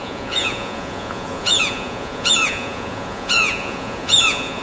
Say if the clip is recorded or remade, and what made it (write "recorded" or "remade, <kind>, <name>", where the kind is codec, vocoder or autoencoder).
remade, vocoder, Vocos